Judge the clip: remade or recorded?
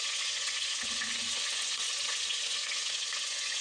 remade